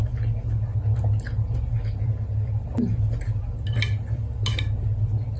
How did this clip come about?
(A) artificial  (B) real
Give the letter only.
B